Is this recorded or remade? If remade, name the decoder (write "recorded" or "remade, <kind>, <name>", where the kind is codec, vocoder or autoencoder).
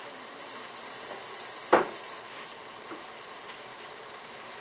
recorded